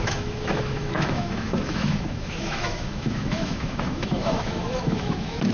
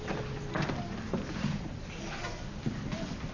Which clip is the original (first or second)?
second